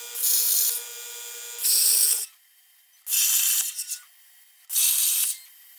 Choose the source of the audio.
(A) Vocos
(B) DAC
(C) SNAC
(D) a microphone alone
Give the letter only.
D